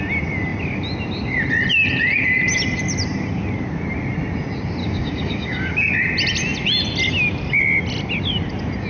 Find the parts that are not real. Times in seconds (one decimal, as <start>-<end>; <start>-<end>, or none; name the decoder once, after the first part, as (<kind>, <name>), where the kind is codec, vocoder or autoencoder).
4.8-5.9 (codec, DAC)